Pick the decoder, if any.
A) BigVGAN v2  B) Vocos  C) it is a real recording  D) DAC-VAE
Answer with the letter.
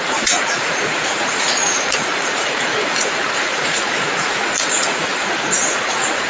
B